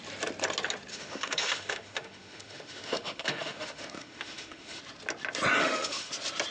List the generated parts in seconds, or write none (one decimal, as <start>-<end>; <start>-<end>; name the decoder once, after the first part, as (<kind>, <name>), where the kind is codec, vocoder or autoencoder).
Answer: 0.9-4.8 (autoencoder, DAC-VAE); 5.6-6.1